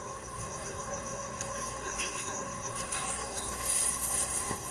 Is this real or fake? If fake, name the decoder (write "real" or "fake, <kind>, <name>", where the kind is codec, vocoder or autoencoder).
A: fake, codec, SNAC